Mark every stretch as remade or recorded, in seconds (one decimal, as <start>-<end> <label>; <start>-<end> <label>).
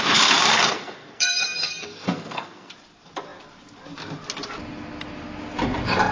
0.0-0.5 recorded; 0.5-2.7 remade; 2.7-6.1 recorded